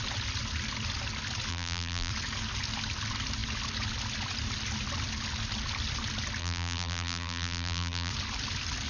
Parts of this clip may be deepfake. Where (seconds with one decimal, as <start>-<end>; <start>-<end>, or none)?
1.5-2.1; 6.4-8.1